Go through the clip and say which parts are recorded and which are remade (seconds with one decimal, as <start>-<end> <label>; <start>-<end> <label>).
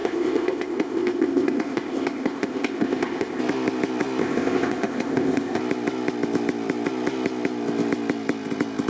0.0-3.4 remade; 3.4-4.2 recorded; 4.2-5.6 remade; 5.6-8.9 recorded